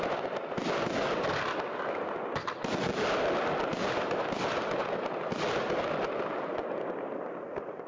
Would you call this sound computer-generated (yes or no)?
no